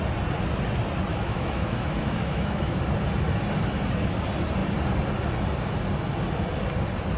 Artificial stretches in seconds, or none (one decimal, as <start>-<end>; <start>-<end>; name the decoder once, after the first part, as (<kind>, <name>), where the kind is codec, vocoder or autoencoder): 1.1-2.8 (autoencoder, DAC-VAE)